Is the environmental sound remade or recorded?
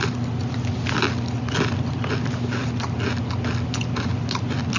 recorded